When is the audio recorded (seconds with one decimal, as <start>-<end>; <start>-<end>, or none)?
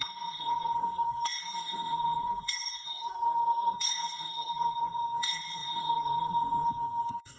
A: none